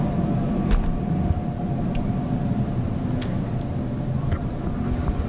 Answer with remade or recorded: recorded